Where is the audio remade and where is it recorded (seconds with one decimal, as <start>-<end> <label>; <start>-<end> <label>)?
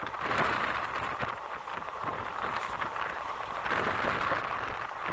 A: 0.0-5.1 recorded